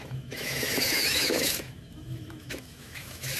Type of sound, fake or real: fake